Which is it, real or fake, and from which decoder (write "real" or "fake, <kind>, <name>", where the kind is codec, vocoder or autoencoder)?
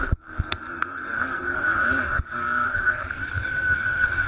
fake, codec, SNAC